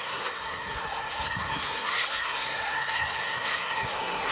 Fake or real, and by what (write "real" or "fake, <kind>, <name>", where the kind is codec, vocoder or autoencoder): fake, codec, SNAC